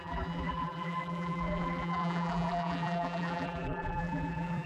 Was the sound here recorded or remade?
remade